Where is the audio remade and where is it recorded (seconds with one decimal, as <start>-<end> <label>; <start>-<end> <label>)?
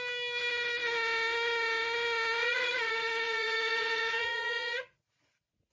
0.0-2.4 recorded; 2.4-5.7 remade